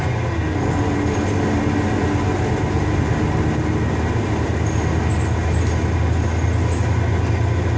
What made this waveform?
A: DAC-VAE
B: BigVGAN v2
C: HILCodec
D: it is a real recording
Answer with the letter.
D